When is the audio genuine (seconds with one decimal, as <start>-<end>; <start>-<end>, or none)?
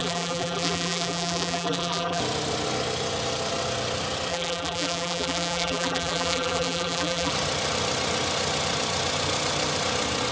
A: 2.2-4.3; 7.3-10.3